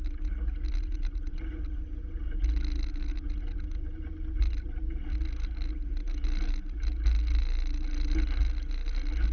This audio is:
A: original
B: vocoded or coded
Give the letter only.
A